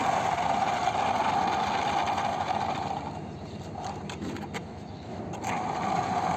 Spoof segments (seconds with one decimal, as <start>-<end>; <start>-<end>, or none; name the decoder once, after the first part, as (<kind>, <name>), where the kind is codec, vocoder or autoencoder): 4.6-5.2 (autoencoder, DAC-VAE)